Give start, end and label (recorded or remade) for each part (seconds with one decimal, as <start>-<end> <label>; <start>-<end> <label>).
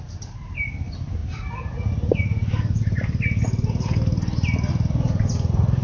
0.0-5.8 recorded